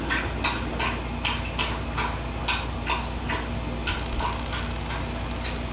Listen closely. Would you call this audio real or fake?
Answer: real